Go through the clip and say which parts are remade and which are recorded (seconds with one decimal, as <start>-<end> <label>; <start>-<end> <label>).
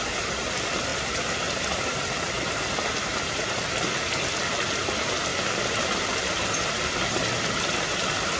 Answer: 0.0-5.3 recorded; 5.3-7.4 remade; 7.4-8.4 recorded